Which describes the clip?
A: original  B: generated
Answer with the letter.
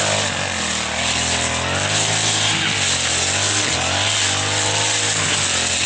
A